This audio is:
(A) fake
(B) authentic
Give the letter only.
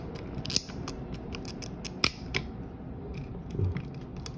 B